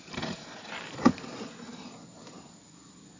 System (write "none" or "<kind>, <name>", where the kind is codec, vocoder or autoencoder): none